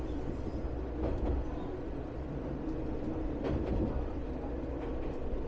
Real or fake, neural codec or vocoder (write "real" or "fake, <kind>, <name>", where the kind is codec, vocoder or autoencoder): real